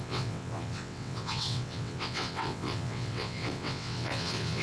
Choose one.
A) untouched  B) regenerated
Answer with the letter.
B